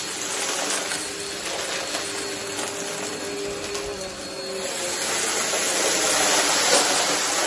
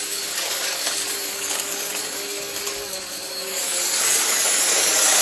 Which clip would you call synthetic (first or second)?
second